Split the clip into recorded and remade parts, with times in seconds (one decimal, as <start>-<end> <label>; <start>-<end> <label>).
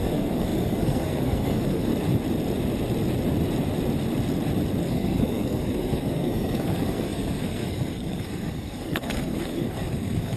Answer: 0.0-1.9 remade; 1.9-4.8 recorded; 4.8-10.4 remade